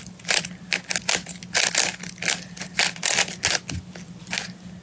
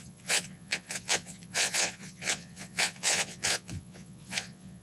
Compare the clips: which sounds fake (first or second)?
second